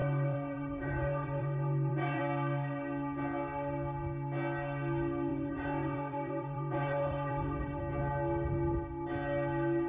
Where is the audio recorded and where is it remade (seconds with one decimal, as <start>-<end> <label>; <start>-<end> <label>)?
0.0-2.2 remade; 2.2-5.3 recorded; 5.3-7.8 remade; 7.8-9.9 recorded

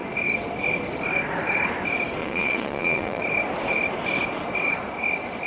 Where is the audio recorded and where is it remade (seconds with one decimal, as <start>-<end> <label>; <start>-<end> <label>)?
0.0-2.2 recorded; 2.2-3.2 remade; 3.2-5.5 recorded

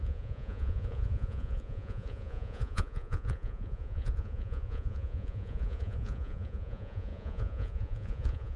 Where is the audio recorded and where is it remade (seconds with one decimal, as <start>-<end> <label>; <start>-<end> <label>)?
0.0-8.6 remade

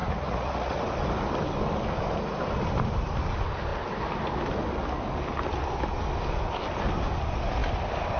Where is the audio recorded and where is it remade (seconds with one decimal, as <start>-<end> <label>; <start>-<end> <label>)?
0.0-0.8 remade; 0.8-8.2 recorded

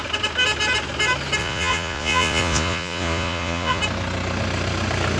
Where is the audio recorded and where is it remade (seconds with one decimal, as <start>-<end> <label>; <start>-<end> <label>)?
0.0-1.4 recorded; 1.4-3.8 remade; 3.8-5.2 recorded

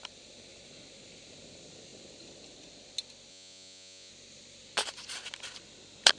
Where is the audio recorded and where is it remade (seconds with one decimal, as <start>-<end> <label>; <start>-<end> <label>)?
0.0-3.3 recorded; 3.3-4.1 remade; 4.1-6.2 recorded

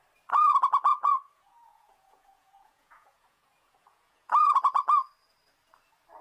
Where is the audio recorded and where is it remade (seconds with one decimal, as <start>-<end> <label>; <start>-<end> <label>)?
0.0-0.9 recorded; 0.9-4.3 remade; 4.3-6.2 recorded